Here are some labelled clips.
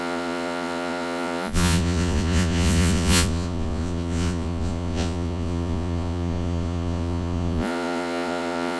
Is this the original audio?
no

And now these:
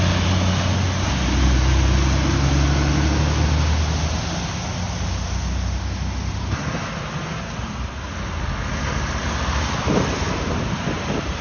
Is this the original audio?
yes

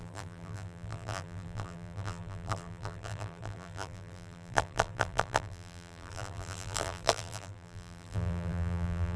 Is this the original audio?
no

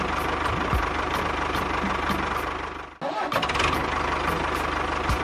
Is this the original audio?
yes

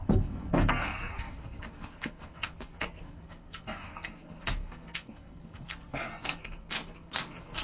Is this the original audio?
no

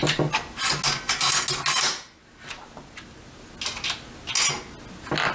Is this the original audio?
yes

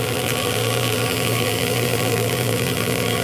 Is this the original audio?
no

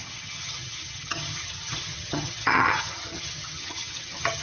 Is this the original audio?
no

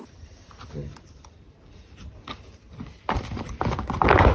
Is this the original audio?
yes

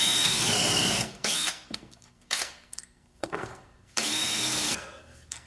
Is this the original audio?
no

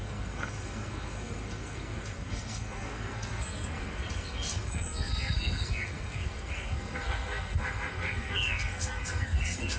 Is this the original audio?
no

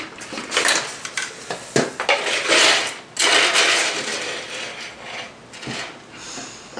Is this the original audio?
yes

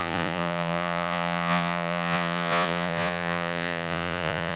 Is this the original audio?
no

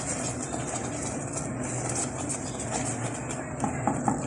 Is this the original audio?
yes